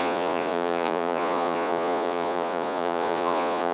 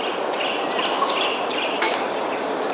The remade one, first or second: first